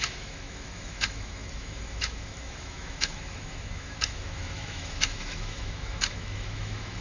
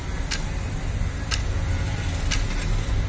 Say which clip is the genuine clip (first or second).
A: second